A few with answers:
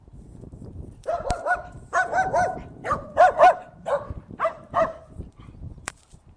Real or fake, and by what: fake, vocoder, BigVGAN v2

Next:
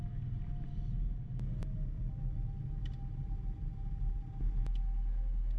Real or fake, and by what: real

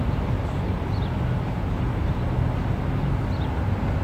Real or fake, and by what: real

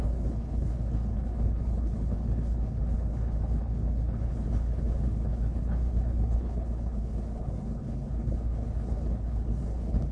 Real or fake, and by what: fake, codec, HILCodec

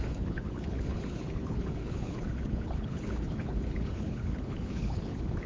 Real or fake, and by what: fake, codec, HILCodec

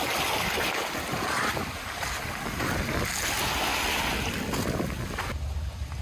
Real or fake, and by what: real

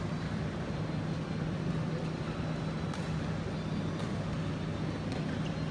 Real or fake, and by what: real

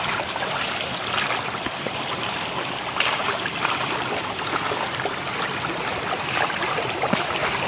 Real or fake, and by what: real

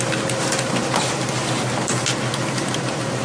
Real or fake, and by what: real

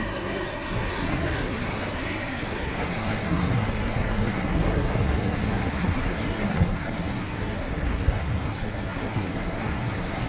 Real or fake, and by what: fake, codec, SNAC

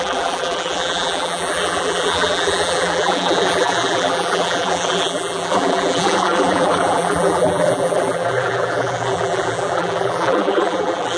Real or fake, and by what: fake, vocoder, BigVGAN v2